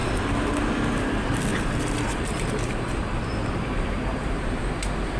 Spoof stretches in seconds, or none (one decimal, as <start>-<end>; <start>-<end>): 1.5-4.6